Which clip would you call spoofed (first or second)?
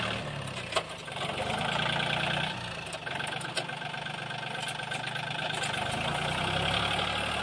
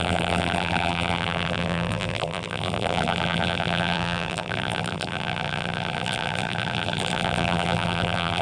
second